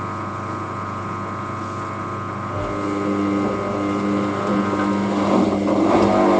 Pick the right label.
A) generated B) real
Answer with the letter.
B